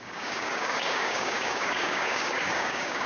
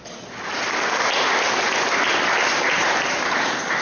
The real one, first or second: second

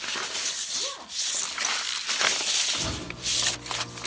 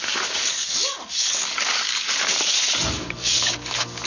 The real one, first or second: first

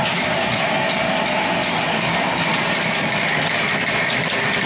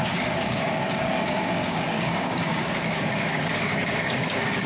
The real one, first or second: first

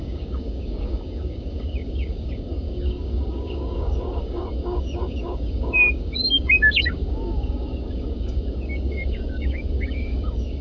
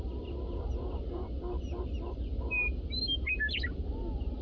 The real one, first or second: second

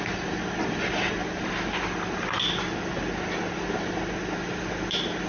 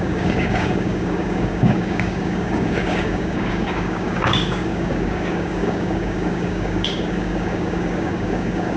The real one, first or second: first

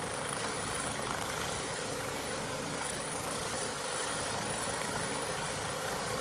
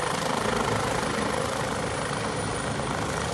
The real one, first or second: second